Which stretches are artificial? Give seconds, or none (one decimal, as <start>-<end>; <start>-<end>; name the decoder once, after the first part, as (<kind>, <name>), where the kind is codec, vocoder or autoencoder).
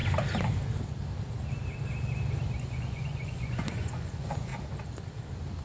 2.6-4.5 (vocoder, Vocos)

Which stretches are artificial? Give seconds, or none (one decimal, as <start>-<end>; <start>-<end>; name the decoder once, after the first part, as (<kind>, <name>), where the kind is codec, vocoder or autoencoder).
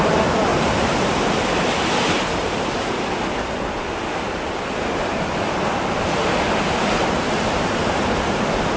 0.5-1.6 (vocoder, BigVGAN v2); 7.0-7.8